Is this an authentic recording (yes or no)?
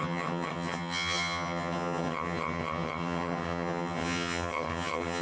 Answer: no